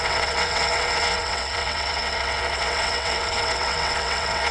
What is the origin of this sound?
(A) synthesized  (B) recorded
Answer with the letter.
A